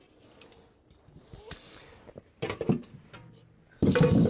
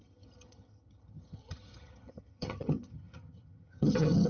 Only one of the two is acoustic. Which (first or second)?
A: first